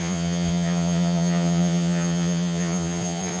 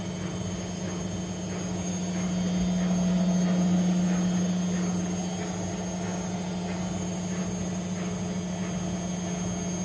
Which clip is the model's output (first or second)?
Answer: first